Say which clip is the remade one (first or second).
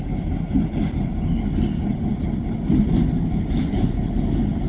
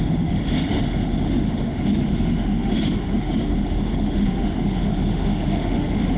second